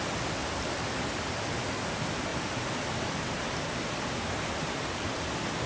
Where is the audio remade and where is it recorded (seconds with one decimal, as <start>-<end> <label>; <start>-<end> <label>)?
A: 0.0-0.4 recorded; 0.4-1.4 remade; 1.4-2.3 recorded; 2.3-5.2 remade; 5.2-5.7 recorded

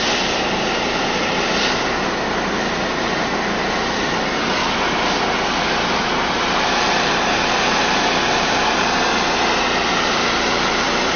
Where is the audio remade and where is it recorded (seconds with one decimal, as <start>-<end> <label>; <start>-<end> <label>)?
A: 0.0-4.6 remade; 4.6-6.0 recorded; 6.0-9.1 remade; 9.1-10.1 recorded; 10.1-11.2 remade